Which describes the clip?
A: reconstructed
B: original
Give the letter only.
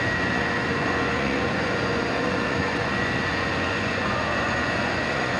A